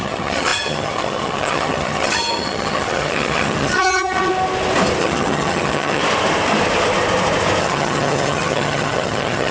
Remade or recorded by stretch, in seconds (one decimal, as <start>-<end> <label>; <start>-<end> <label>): 0.0-4.3 remade; 4.3-5.0 recorded; 5.0-6.0 remade; 6.0-7.6 recorded; 7.6-9.5 remade